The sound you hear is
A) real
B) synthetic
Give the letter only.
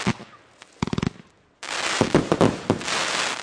A